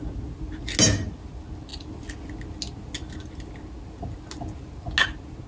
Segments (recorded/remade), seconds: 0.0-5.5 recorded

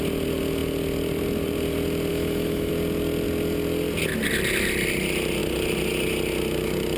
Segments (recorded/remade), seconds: 0.0-2.1 recorded; 2.1-2.7 remade; 2.7-7.0 recorded

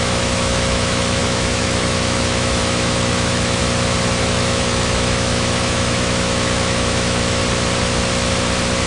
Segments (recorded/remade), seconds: 0.0-3.6 remade; 3.6-4.2 recorded; 4.2-7.4 remade; 7.4-8.9 recorded

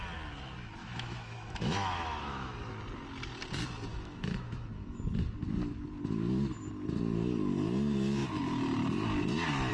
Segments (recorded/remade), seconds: 0.0-0.8 recorded; 0.8-2.5 remade; 2.5-3.9 recorded; 3.9-5.0 remade; 5.0-9.7 recorded

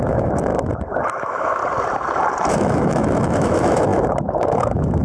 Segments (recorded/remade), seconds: 0.0-0.5 remade; 0.5-1.1 recorded; 1.1-1.6 remade; 1.6-2.5 recorded; 2.5-5.0 remade